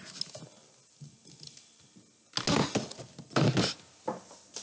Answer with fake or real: real